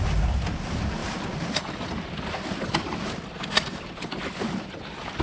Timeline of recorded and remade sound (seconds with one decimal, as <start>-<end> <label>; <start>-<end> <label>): 0.0-5.2 recorded